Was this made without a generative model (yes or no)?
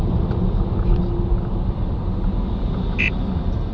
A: yes